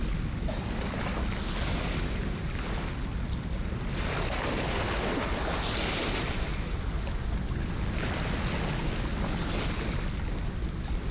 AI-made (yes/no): no